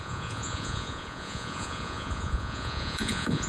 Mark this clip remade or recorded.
remade